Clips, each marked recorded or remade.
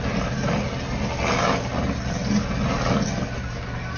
recorded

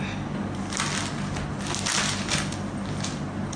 recorded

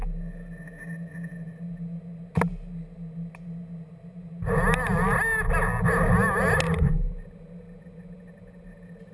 recorded